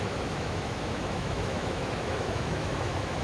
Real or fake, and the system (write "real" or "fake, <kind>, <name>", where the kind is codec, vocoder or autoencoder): fake, autoencoder, DAC-VAE